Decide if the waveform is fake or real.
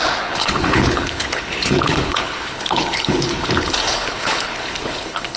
fake